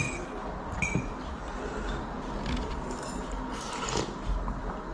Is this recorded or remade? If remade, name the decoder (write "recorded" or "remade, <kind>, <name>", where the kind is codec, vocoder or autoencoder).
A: recorded